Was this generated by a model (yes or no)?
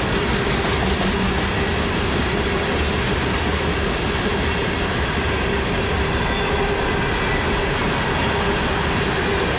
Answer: no